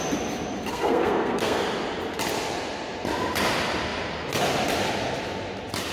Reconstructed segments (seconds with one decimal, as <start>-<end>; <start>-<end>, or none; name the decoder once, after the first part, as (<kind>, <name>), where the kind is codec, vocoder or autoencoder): 0.7-1.6 (codec, SNAC)